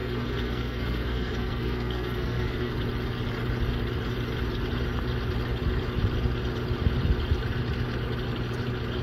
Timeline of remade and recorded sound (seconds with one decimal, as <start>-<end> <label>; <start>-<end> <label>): 0.0-2.7 remade; 2.7-9.0 recorded